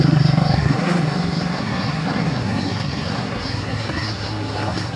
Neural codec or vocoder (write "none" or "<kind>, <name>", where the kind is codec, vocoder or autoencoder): codec, SNAC